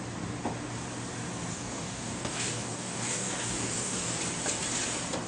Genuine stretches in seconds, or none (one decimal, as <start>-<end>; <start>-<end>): 0.0-1.5; 4.2-5.3